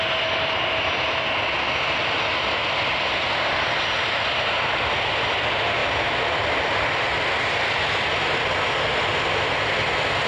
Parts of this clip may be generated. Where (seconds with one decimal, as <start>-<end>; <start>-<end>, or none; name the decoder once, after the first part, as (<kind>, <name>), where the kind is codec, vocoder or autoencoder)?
none